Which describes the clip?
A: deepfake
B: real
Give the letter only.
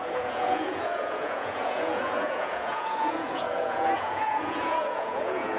A